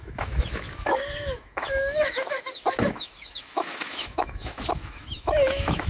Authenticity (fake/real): fake